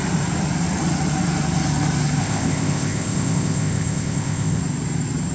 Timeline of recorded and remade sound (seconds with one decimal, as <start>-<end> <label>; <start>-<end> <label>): 0.0-2.2 recorded; 2.2-4.6 remade; 4.6-5.3 recorded

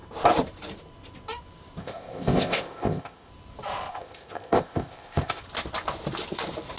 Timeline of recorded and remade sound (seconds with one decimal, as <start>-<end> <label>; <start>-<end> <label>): 0.0-1.8 recorded; 1.8-3.3 remade; 3.3-3.9 recorded; 3.9-5.4 remade; 5.4-6.8 recorded

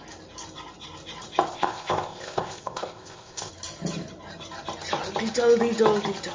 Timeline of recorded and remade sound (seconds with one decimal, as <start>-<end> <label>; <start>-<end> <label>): 0.0-1.5 recorded; 1.5-3.5 remade; 3.5-6.3 recorded

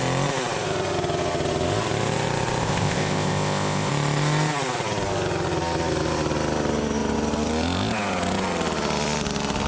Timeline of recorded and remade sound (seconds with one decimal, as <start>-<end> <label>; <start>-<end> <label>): 0.0-2.6 recorded; 2.6-3.9 remade; 3.9-9.7 recorded

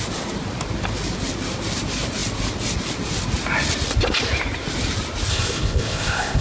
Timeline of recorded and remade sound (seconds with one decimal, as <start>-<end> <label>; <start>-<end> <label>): 0.0-5.3 recorded; 5.3-6.4 remade

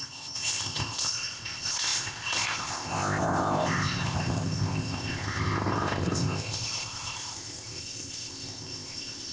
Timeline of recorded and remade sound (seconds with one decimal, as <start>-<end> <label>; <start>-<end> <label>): 0.0-9.3 remade